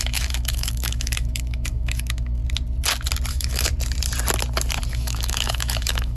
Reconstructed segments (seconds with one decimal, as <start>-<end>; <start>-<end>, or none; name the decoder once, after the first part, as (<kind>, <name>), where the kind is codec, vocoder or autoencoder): 0.0-2.4 (autoencoder, DAC-VAE); 3.3-3.7; 4.9-6.2